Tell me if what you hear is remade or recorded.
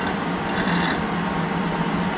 recorded